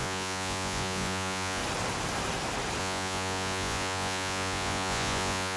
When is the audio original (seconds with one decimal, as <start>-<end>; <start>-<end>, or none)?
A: 1.6-2.8